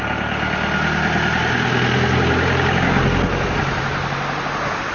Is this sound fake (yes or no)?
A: no